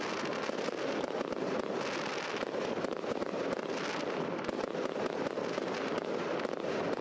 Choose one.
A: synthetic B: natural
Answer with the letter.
B